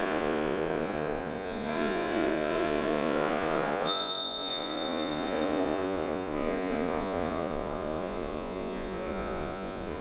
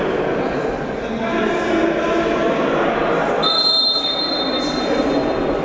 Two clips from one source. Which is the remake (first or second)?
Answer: first